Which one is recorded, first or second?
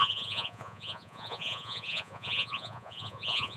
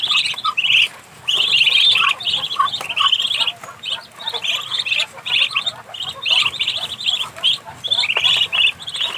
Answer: second